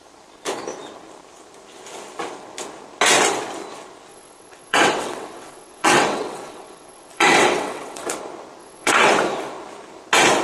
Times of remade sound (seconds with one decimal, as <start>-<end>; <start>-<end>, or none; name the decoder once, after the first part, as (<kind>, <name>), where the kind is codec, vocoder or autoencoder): 4.1-8.2 (vocoder, WaveNeXt); 8.6-9.1